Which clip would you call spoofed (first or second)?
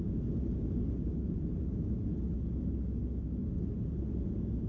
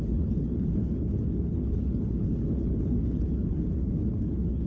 second